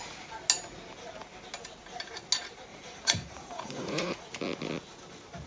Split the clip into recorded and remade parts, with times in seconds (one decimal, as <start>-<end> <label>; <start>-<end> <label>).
0.0-2.7 recorded; 2.7-4.3 remade; 4.3-5.5 recorded